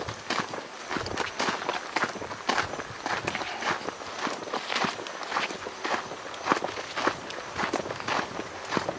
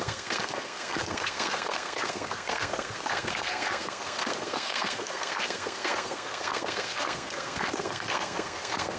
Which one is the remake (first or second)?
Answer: second